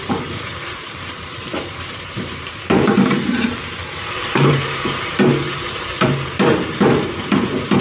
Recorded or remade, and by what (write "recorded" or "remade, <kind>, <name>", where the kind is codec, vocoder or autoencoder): remade, vocoder, BigVGAN v2